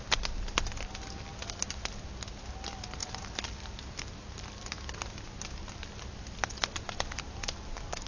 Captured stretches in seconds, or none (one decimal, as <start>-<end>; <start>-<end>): 0.0-8.1